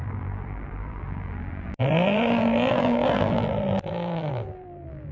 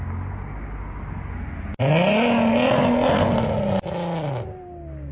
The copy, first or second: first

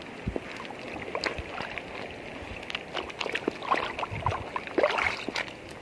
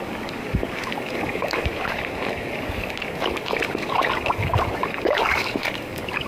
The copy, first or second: second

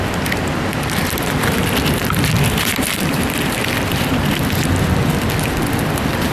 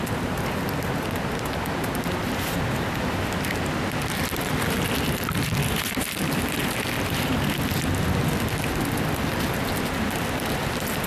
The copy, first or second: first